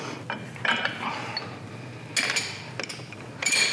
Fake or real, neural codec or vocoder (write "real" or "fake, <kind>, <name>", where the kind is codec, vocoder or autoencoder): real